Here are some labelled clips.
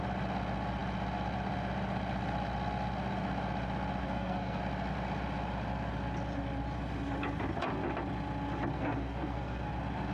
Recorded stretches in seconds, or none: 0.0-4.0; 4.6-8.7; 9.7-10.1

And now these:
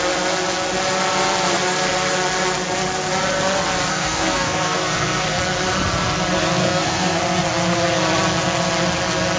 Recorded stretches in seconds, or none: 0.0-3.9; 5.4-6.6; 7.2-9.4

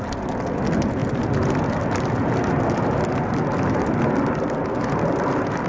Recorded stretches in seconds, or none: 0.0-5.7

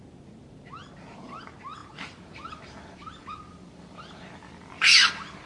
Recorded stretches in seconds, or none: 0.0-1.8; 5.1-5.5